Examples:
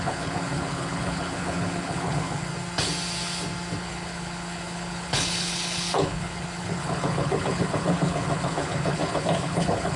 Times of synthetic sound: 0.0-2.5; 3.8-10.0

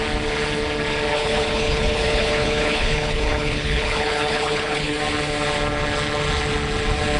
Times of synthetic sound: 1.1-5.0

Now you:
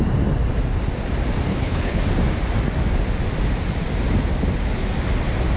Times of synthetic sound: 1.5-2.0